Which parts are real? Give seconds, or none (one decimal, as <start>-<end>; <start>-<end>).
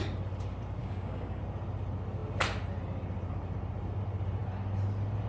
0.0-0.8; 1.4-5.3